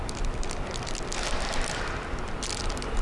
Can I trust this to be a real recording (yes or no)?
yes